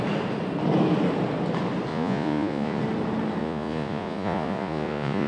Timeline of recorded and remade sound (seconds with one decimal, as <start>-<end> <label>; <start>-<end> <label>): 0.0-1.9 recorded; 1.9-2.8 remade; 2.8-3.4 recorded; 3.4-5.3 remade